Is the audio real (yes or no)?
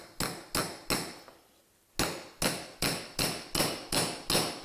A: yes